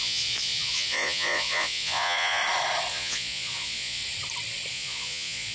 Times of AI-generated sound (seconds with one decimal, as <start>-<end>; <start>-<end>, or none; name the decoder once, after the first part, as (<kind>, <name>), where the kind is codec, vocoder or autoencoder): 0.0-2.4 (vocoder, Vocos); 2.9-4.0; 4.7-5.5